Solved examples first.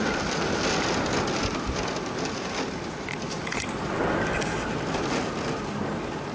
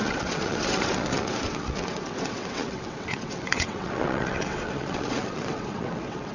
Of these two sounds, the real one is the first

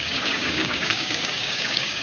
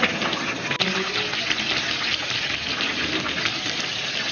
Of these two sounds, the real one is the second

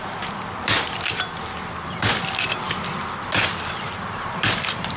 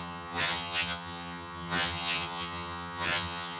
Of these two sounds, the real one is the first